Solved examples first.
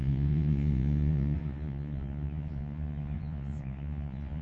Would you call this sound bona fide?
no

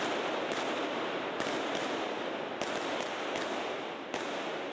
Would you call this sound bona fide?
yes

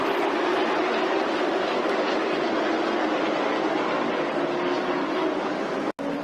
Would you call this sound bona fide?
yes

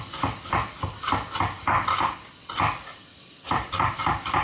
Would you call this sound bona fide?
no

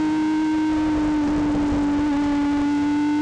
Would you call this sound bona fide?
yes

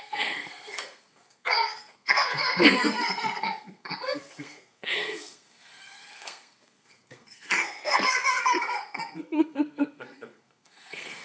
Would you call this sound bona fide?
no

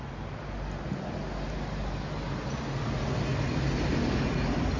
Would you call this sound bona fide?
yes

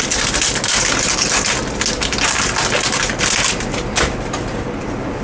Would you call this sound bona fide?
yes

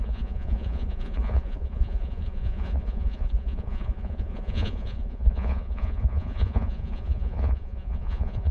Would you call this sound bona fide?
no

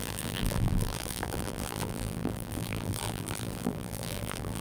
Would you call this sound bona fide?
no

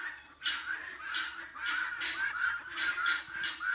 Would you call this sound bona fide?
yes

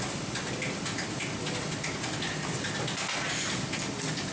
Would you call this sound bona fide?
yes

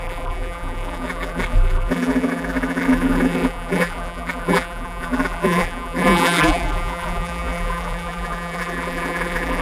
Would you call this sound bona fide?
no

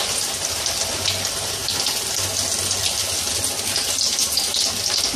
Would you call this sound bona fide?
yes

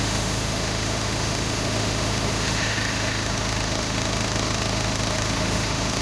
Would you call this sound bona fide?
no